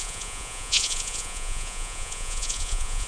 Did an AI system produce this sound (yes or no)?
yes